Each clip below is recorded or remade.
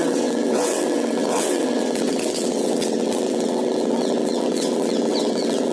remade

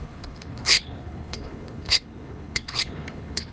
remade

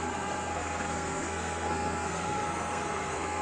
remade